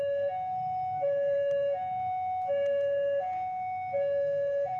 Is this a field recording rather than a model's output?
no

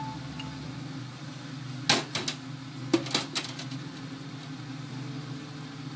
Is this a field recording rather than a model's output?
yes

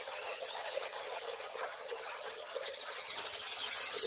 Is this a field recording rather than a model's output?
no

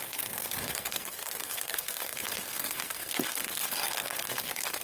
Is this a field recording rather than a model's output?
no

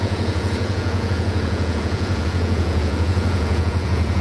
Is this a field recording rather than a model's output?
no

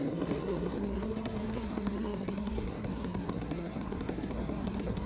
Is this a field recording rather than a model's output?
no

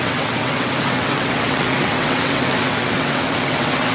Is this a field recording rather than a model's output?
no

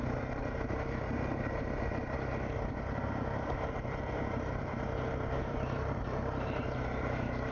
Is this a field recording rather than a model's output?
no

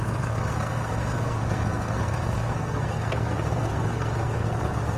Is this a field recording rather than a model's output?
no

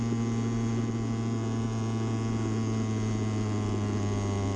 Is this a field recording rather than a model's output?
yes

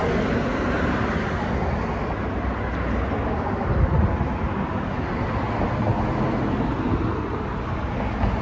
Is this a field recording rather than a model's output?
yes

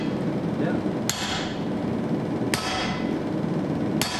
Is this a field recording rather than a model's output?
yes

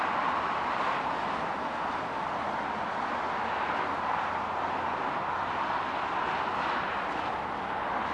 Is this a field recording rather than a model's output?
yes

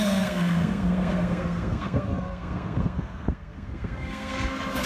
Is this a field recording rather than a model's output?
no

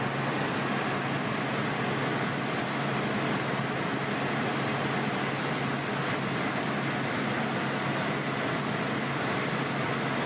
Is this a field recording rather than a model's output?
yes